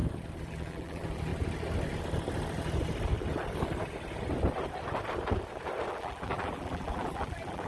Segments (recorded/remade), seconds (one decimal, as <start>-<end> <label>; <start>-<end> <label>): 0.0-0.5 recorded; 0.5-1.3 remade; 1.3-5.9 recorded; 5.9-7.7 remade